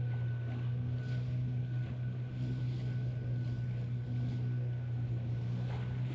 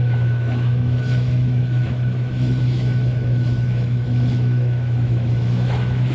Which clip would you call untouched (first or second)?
first